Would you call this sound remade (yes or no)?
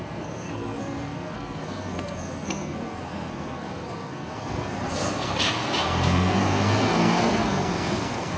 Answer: yes